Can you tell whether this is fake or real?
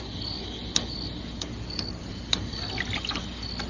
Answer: real